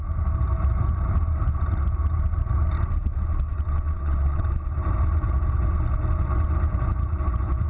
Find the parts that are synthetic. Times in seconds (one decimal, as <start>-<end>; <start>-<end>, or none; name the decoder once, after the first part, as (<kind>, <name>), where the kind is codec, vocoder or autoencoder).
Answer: 3.5-4.4 (vocoder, WaveNeXt)